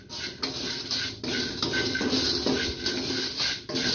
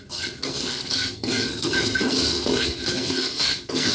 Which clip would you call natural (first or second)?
first